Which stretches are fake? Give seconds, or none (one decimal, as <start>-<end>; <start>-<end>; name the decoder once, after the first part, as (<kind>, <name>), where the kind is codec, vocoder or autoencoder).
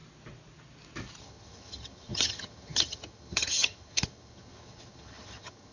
1.2-5.7 (vocoder, HiFi-GAN)